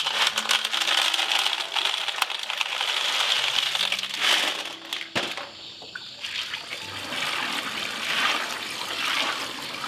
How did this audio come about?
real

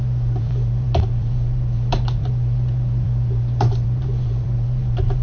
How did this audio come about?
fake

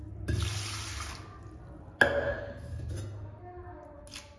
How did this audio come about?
real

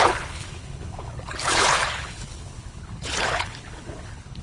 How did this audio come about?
fake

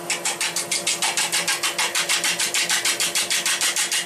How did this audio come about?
real